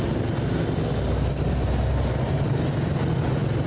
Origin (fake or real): real